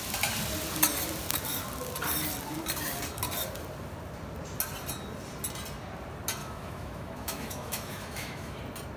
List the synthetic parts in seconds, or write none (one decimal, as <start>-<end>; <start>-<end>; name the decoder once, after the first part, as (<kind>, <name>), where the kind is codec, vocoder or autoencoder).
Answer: 6.4-8.6 (autoencoder, DAC-VAE)